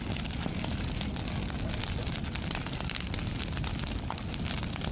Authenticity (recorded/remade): recorded